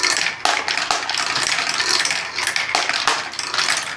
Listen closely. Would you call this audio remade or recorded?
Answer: recorded